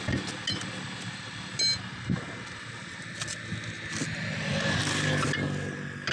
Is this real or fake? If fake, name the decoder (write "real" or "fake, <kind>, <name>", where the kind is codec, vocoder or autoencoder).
real